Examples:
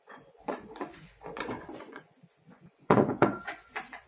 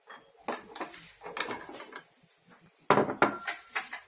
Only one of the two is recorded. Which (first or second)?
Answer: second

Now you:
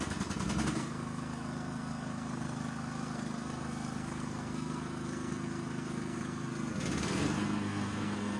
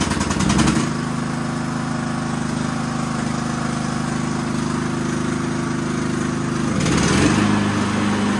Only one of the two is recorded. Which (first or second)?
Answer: second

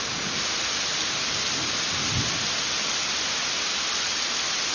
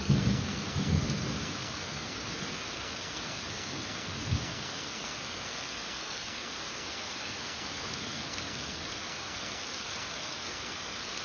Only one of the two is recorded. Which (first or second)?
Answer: first